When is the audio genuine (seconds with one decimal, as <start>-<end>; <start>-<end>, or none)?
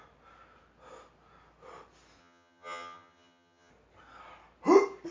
0.0-2.2; 3.7-5.1